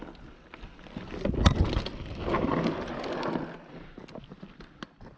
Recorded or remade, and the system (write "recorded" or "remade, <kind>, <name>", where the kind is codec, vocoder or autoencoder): recorded